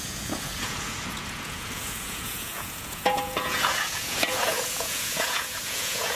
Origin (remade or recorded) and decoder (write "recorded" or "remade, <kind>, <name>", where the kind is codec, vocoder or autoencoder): remade, vocoder, Vocos